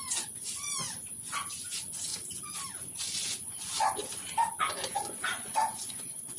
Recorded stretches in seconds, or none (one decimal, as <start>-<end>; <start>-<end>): 2.1-2.7; 4.0-4.6

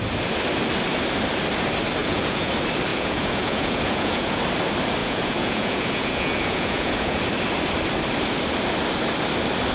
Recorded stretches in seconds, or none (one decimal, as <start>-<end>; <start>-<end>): 0.0-2.0; 2.5-2.9; 4.4-5.0; 7.2-9.7